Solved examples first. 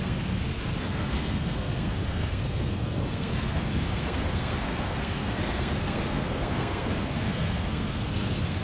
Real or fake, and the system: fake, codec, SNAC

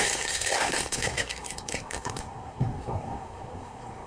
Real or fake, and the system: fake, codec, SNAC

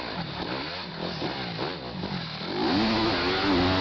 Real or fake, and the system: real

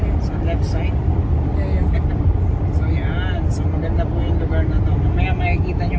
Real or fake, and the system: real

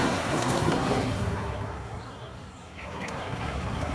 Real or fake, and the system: fake, codec, SNAC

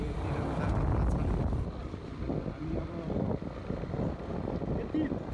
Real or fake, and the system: real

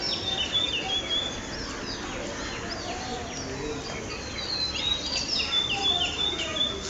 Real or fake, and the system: real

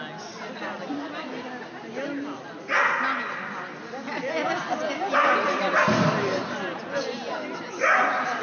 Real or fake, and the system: real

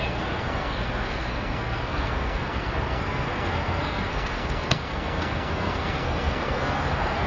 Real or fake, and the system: fake, codec, SNAC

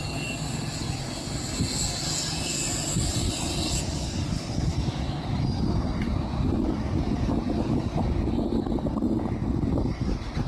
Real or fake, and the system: real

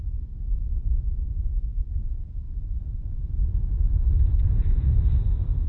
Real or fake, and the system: real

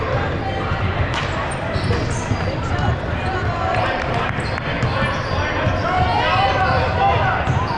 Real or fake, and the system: real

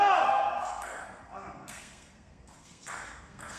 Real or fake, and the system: fake, codec, SNAC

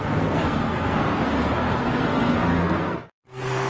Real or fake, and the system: fake, codec, SNAC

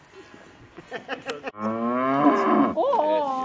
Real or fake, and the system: real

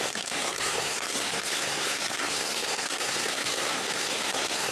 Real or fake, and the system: fake, codec, SNAC